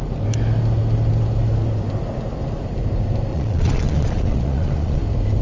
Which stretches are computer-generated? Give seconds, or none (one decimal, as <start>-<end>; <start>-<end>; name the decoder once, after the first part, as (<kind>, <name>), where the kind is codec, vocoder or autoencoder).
3.3-5.0 (vocoder, Vocos)